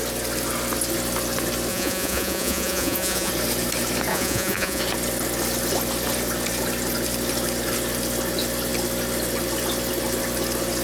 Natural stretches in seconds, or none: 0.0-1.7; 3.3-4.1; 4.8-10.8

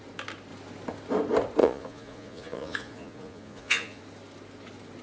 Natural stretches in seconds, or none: 0.0-1.6; 4.0-5.0

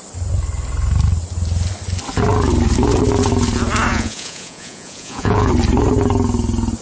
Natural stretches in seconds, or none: 0.0-3.9; 5.5-6.8

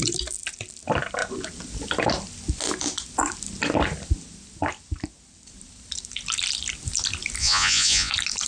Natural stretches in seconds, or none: 0.0-7.4; 8.1-8.5

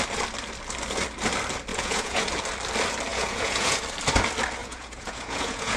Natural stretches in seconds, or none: 0.0-1.7; 2.3-3.1; 3.8-4.6